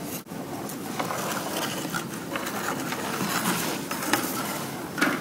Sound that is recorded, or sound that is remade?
recorded